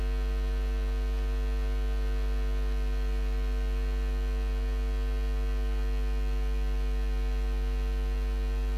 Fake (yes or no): no